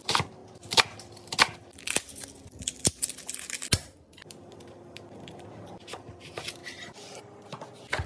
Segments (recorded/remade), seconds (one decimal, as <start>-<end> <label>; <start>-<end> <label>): 0.0-8.1 recorded

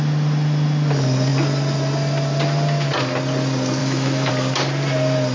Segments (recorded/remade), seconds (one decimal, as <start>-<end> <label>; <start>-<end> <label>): 0.0-3.8 recorded; 3.8-4.3 remade; 4.3-5.3 recorded